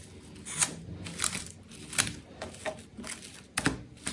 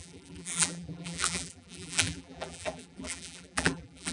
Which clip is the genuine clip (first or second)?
first